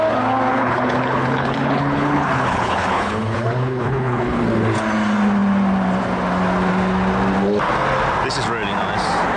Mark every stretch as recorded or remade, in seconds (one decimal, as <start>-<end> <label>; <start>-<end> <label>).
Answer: 0.0-0.5 recorded; 0.5-4.4 remade; 4.4-9.4 recorded